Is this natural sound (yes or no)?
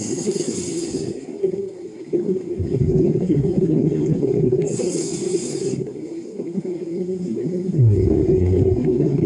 no